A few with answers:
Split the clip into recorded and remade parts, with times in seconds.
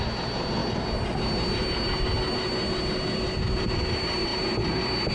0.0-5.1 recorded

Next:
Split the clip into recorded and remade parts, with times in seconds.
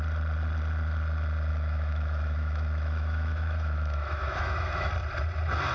0.0-1.5 recorded; 1.5-4.9 remade; 4.9-5.7 recorded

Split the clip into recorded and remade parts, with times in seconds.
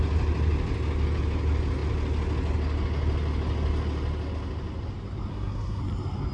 0.0-5.3 recorded; 5.3-5.8 remade; 5.8-6.3 recorded